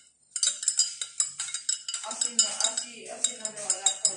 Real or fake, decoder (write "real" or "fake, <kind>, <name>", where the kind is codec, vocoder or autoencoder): real